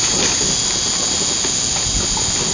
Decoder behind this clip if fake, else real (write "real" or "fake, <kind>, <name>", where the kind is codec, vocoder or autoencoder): real